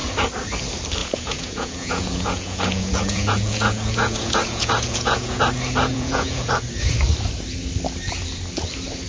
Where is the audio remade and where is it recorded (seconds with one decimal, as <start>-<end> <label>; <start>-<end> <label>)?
0.0-1.0 recorded; 1.0-5.4 remade; 5.4-5.9 recorded; 5.9-6.5 remade; 6.5-9.1 recorded